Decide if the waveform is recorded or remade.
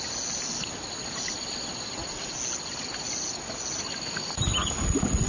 recorded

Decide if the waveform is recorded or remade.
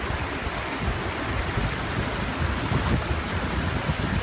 recorded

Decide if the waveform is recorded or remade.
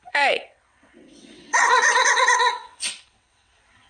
remade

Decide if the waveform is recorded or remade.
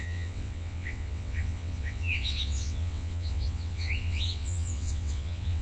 remade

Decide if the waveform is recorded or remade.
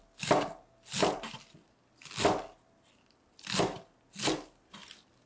recorded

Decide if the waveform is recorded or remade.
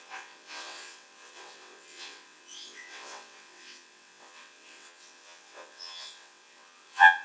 remade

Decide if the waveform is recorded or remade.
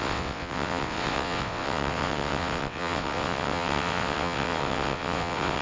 remade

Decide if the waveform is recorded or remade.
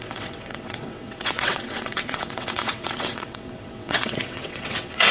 remade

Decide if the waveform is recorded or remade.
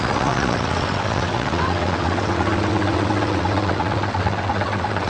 remade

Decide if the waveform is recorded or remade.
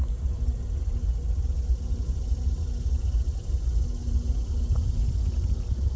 recorded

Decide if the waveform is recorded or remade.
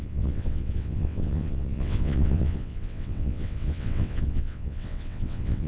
remade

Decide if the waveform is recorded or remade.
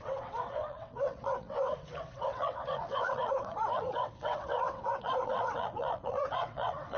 remade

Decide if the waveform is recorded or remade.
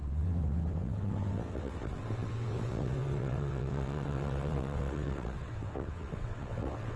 remade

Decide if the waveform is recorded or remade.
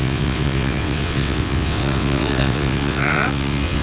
remade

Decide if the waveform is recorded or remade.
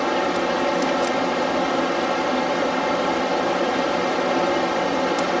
recorded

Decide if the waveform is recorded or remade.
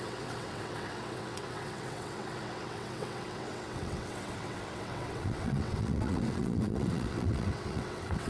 remade